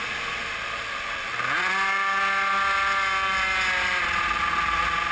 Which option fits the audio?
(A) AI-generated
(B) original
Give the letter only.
B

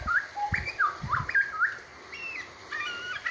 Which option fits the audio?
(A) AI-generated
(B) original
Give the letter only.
A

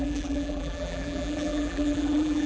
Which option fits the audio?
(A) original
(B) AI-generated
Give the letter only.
B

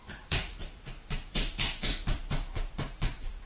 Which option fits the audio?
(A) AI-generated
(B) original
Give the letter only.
A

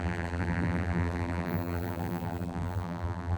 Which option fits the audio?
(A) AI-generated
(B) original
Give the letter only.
A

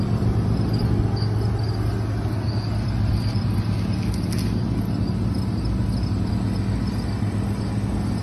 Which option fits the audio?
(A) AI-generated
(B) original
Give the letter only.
B